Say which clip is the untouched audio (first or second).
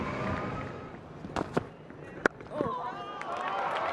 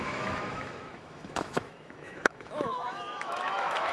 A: first